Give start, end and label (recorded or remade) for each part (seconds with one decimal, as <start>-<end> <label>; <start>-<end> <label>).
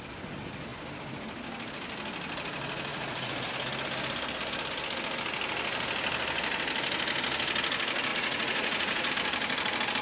0.0-2.9 recorded; 2.9-3.5 remade; 3.5-8.1 recorded; 8.1-9.1 remade; 9.1-10.0 recorded